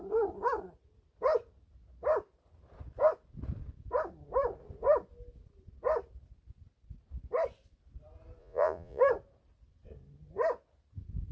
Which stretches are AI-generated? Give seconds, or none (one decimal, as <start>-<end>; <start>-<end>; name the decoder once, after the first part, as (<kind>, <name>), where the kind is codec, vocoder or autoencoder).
8.4-9.0 (vocoder, Vocos)